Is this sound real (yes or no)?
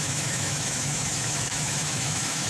no